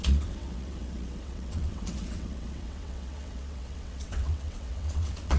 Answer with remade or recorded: remade